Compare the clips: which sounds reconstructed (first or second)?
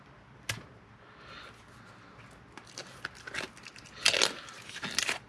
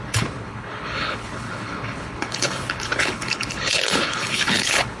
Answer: second